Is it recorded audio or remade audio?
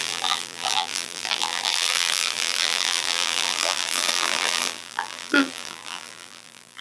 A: remade